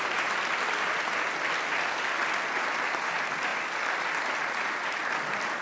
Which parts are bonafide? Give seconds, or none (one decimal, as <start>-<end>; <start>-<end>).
0.0-5.6